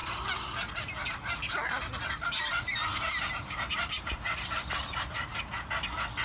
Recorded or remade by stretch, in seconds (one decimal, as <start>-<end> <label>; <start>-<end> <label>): 0.0-2.9 recorded; 2.9-5.5 remade; 5.5-6.2 recorded